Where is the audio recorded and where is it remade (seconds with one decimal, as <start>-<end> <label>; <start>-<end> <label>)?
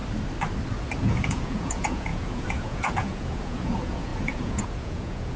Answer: 0.0-1.0 recorded; 1.0-5.4 remade